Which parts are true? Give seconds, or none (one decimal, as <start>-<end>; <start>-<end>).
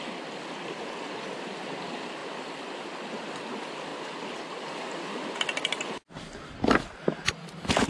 0.0-7.9